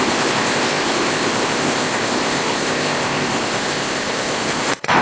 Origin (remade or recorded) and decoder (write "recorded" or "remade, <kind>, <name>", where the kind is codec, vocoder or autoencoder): remade, codec, ZipCodec